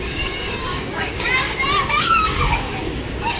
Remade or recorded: remade